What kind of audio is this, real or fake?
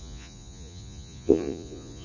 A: fake